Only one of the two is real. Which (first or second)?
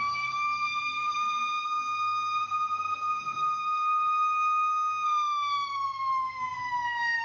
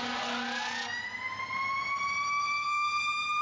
second